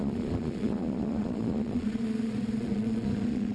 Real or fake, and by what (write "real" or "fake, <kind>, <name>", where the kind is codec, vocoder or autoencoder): fake, vocoder, Vocos